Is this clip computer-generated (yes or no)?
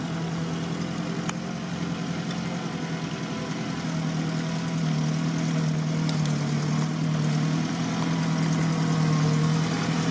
no